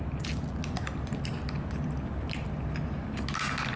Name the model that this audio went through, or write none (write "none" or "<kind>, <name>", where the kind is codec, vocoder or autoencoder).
none